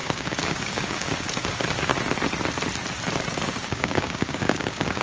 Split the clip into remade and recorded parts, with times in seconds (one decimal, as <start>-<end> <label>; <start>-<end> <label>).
0.0-1.9 remade; 1.9-3.3 recorded; 3.3-5.0 remade